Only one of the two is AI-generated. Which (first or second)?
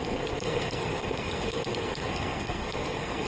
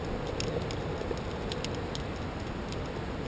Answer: first